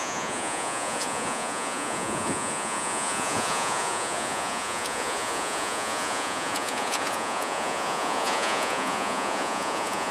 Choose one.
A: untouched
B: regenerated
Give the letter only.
B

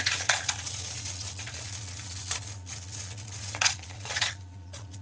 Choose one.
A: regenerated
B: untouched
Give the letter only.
A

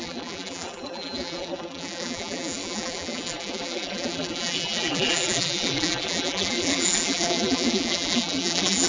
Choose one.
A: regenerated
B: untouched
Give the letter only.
A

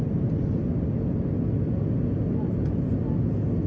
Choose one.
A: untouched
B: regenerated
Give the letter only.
A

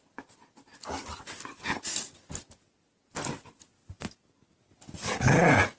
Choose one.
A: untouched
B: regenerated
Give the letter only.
A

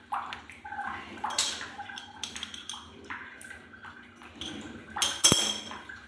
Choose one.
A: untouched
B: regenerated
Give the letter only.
A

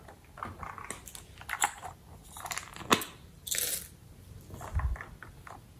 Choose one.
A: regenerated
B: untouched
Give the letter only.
B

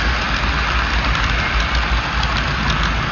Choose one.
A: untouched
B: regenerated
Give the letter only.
A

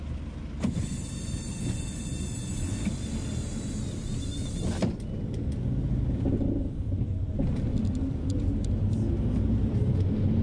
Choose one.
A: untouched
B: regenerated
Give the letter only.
A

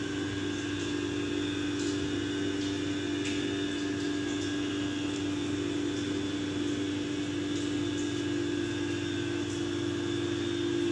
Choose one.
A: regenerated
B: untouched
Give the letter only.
B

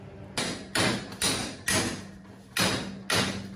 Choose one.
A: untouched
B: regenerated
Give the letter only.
A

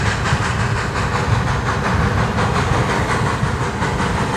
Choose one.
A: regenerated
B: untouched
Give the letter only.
B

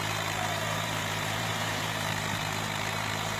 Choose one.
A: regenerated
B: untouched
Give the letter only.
A